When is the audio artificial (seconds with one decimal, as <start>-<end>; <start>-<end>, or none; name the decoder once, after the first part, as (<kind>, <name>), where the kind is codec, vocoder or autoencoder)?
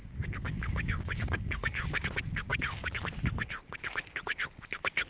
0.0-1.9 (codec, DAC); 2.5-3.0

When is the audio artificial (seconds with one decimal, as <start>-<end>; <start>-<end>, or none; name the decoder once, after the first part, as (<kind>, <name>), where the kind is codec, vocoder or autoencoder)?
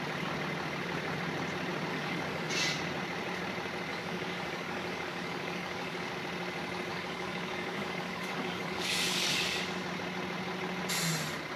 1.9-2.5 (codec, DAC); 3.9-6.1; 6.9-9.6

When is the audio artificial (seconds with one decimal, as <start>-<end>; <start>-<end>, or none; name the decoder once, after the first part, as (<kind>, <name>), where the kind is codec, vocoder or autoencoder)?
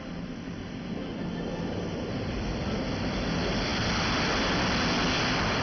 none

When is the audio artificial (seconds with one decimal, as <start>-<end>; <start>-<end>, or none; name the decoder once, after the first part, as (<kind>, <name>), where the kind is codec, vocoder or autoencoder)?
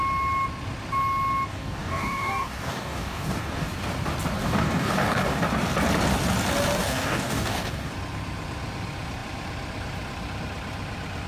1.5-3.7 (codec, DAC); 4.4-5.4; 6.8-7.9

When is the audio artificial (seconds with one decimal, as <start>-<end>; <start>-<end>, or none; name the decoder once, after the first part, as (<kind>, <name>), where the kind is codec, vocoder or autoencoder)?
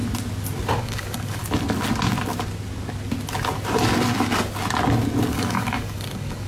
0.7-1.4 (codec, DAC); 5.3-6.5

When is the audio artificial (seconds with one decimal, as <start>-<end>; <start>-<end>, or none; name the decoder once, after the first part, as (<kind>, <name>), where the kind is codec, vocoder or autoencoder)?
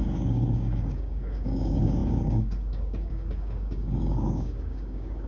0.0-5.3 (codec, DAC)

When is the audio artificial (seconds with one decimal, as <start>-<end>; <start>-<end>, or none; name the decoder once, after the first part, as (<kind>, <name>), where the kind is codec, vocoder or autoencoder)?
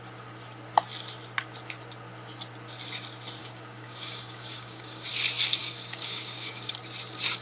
3.4-5.1 (codec, DAC); 5.6-6.7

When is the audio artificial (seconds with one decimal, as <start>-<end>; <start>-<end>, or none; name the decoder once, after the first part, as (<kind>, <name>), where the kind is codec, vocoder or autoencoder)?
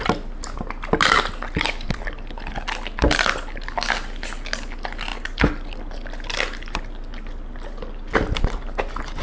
none